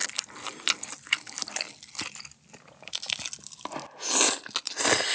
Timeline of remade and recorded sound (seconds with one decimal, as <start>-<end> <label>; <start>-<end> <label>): 0.0-5.1 recorded